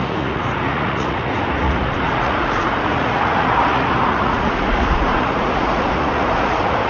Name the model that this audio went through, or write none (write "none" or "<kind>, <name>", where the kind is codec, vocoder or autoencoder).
vocoder, Vocos